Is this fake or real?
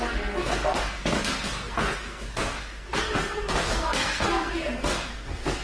fake